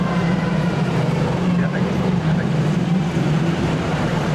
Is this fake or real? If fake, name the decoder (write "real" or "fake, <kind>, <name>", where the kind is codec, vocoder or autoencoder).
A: fake, vocoder, BigVGAN v2